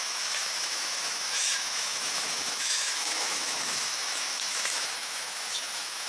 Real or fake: fake